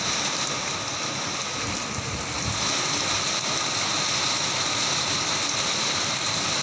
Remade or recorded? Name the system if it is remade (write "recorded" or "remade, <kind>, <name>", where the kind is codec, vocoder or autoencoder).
recorded